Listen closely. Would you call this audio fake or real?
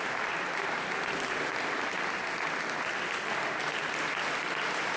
real